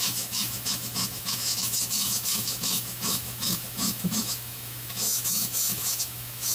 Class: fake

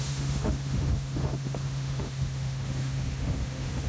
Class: fake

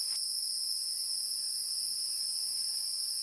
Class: real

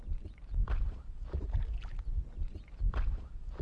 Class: real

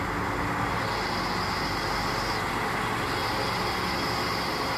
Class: real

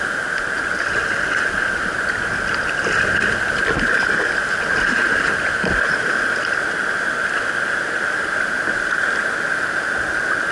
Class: real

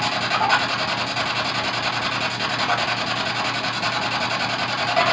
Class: real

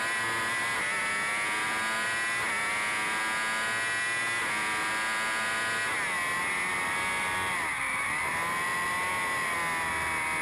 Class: real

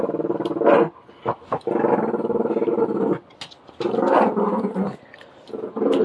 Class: real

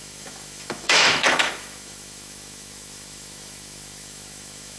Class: fake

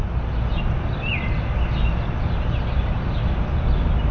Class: real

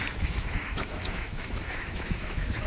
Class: fake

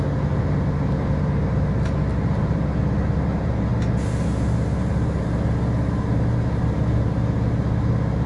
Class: real